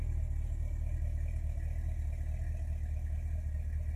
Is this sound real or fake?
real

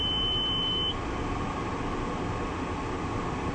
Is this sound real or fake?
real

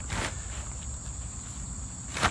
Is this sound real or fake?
fake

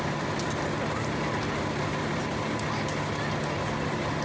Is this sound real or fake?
real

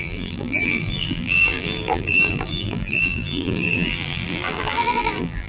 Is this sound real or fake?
fake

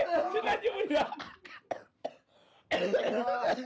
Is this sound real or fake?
real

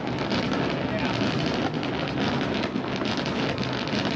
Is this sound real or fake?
real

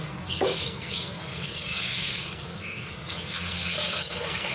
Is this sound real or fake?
fake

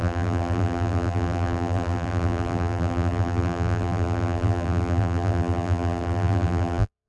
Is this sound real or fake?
fake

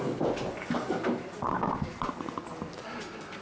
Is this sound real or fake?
real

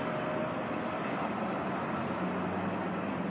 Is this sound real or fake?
real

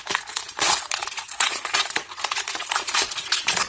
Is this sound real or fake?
fake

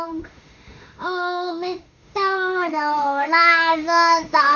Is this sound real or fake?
fake